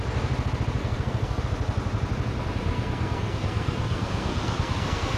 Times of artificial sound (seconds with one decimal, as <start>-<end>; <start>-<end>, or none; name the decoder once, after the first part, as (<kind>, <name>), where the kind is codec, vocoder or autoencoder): 0.8-1.4 (codec, SNAC); 2.7-5.2